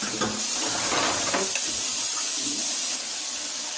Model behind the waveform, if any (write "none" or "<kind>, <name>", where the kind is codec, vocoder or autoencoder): none